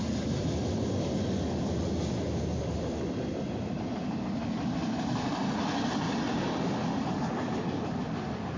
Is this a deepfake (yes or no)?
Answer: no